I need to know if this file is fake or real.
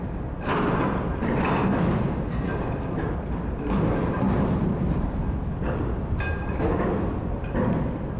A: real